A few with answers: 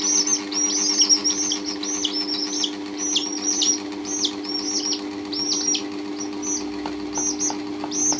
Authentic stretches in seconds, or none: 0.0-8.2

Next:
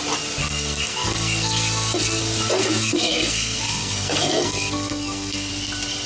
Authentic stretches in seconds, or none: 0.0-0.4; 2.2-2.6; 5.5-6.1

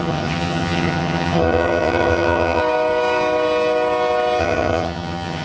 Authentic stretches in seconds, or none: 2.6-4.4

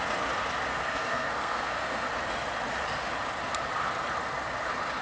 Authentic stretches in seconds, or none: 0.0-0.7; 2.1-5.0

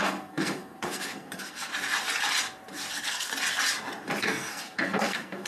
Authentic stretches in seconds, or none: 1.7-2.9; 3.3-4.2

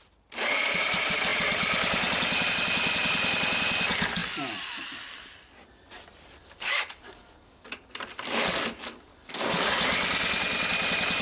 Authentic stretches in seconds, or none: 0.0-6.4; 8.0-9.1; 9.7-11.2

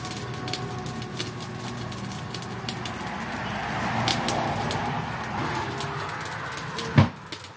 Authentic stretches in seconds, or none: 0.0-7.6